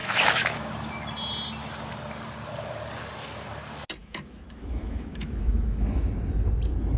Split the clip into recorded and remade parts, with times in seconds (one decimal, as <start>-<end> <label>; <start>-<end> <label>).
0.0-0.7 remade; 0.7-4.0 recorded; 4.0-6.0 remade; 6.0-7.0 recorded